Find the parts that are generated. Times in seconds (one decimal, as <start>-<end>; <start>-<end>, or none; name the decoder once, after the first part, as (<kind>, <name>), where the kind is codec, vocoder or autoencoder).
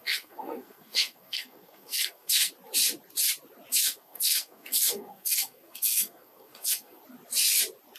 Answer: 0.0-2.5 (codec, SNAC); 3.7-7.0